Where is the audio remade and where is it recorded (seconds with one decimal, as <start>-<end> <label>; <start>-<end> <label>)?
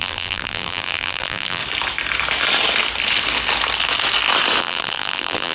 0.0-1.6 remade; 1.6-4.6 recorded; 4.6-5.5 remade